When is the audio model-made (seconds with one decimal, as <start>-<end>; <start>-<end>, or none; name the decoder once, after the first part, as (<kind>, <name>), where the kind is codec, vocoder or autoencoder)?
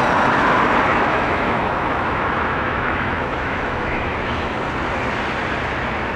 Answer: 0.9-4.6 (autoencoder, DAC-VAE)